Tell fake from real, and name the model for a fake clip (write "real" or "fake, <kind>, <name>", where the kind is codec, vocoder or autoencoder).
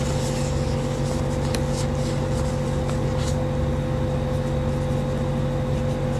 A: real